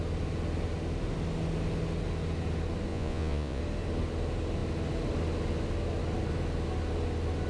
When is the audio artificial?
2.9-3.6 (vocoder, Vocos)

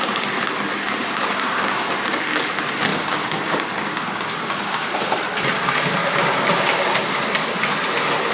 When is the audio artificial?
1.0-1.9 (codec, DAC); 2.9-5.0; 6.0-7.0

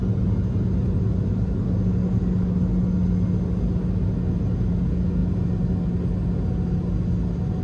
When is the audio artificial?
1.9-2.5 (codec, DAC)

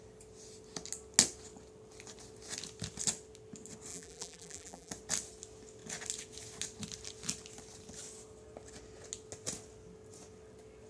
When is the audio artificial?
3.9-4.9 (vocoder, BigVGAN v2)

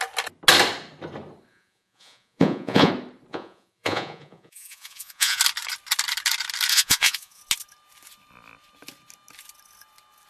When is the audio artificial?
1.5-2.9 (vocoder, Vocos); 3.3-5.4; 6.7-7.4

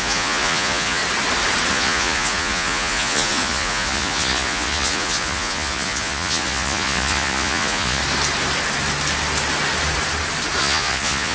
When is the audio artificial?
0.0-1.0 (vocoder, Vocos); 1.7-8.0; 10.6-11.3

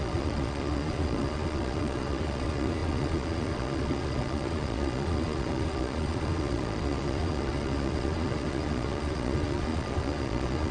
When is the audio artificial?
0.0-10.7 (vocoder, Vocos)